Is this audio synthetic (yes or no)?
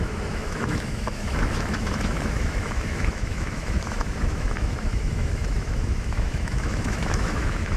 yes